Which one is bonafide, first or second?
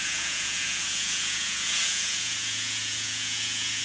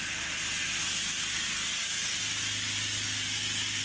second